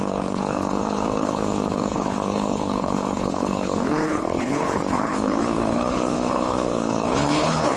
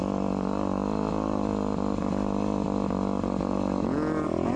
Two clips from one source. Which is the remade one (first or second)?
first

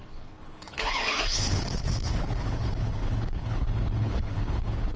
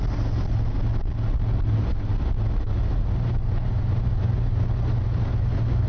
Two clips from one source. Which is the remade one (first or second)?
first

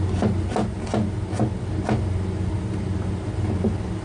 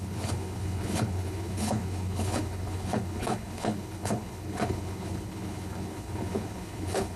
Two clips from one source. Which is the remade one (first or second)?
second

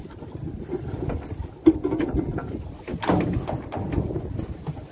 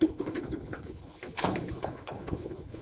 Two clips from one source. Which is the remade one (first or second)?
second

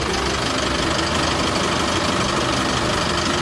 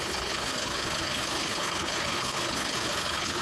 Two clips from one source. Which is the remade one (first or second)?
second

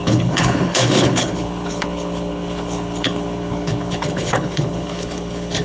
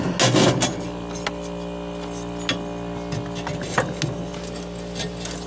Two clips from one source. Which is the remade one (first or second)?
first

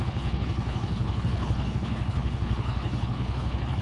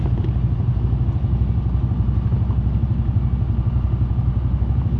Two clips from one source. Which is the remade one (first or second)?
first